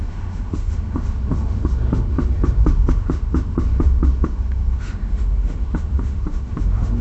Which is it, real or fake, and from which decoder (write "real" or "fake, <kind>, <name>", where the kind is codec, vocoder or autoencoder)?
fake, autoencoder, DAC-VAE